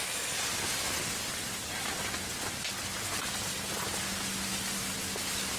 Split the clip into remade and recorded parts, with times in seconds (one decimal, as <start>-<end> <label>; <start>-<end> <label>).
0.0-5.6 recorded